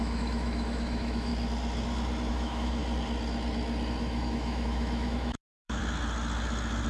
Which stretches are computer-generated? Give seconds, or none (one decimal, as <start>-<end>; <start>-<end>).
0.0-1.3; 2.3-2.8; 4.0-5.8